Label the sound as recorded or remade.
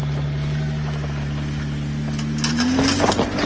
recorded